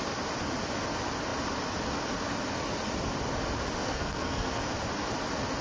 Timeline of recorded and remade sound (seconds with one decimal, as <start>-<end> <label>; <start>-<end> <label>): 0.0-3.8 recorded; 3.8-4.6 remade; 4.6-5.6 recorded